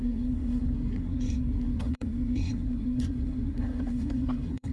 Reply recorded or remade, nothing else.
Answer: remade